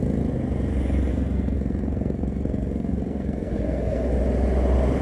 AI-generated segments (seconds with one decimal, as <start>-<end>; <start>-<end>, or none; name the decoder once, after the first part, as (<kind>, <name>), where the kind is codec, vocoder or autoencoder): 1.1-4.1 (codec, SNAC)